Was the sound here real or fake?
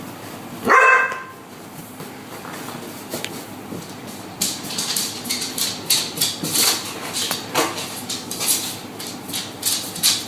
real